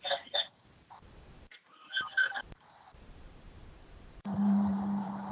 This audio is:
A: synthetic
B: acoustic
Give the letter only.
A